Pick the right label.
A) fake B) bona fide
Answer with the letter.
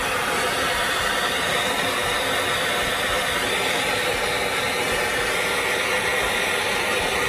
B